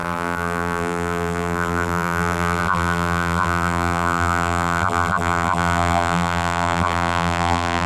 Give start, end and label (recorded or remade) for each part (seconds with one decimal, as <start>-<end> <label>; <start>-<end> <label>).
0.0-7.9 remade